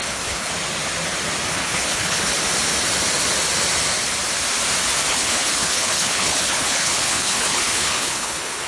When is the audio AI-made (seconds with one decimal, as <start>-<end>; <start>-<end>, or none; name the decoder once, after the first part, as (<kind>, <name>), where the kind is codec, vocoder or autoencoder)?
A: 0.0-0.5 (codec, HILCodec); 1.5-2.3; 5.1-8.7